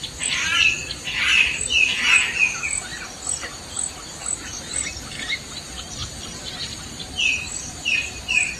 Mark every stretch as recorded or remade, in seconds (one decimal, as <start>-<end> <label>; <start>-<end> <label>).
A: 0.0-8.6 recorded